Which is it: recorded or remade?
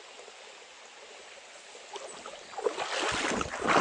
recorded